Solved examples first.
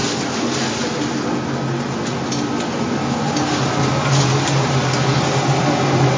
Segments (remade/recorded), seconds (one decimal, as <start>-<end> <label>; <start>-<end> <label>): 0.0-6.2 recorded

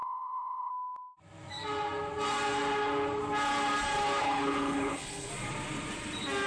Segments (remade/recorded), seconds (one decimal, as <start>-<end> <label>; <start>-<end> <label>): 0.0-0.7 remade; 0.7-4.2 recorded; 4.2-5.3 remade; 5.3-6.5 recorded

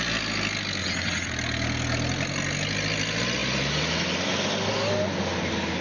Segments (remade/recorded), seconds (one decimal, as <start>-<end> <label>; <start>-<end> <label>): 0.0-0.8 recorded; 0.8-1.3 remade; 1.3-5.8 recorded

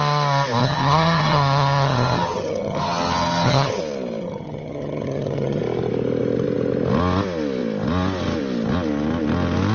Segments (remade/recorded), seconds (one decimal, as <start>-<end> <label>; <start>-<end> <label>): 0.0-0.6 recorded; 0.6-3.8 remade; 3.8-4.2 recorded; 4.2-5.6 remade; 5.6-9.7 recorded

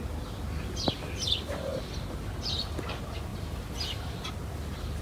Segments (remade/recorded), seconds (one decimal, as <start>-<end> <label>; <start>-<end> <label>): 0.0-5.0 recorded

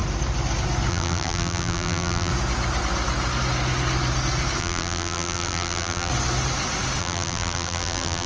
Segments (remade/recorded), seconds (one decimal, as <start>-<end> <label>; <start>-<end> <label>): 0.0-0.9 recorded; 0.9-2.3 remade; 2.3-4.6 recorded; 4.6-6.1 remade; 6.1-7.0 recorded; 7.0-8.3 remade